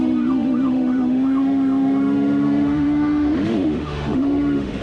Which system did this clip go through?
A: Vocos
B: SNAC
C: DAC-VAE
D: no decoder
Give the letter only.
C